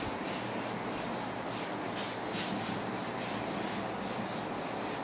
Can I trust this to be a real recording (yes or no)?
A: yes